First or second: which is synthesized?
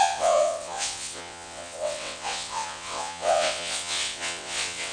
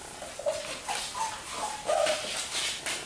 first